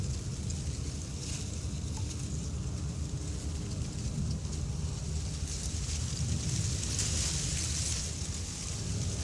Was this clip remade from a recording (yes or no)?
no